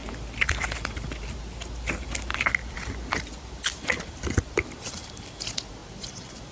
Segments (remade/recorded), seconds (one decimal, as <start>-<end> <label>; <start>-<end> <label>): 0.0-2.3 recorded; 2.3-4.4 remade; 4.4-5.8 recorded; 5.8-6.5 remade